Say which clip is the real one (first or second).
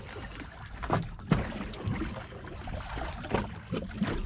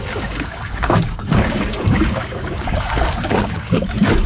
first